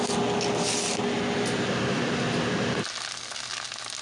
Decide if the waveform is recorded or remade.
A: recorded